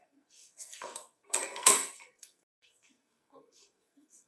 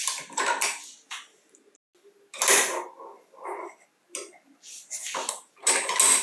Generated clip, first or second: first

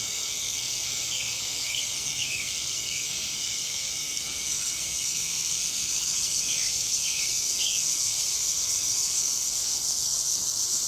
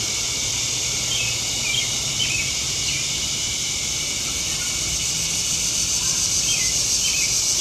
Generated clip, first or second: first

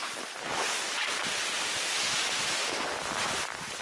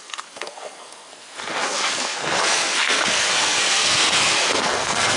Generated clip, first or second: second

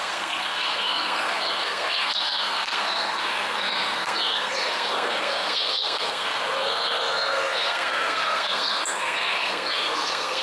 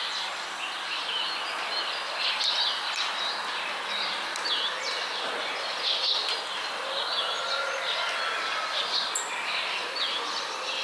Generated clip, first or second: first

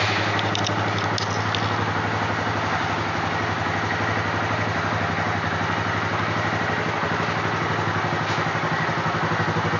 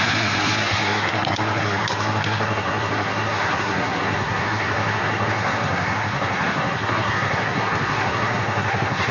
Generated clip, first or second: second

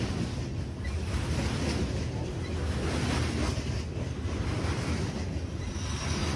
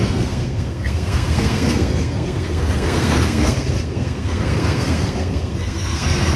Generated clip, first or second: second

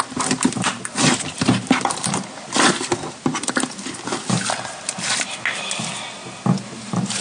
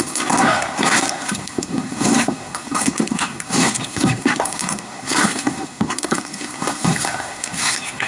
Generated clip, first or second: second